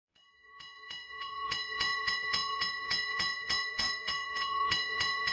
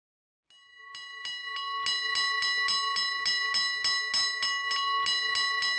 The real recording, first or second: second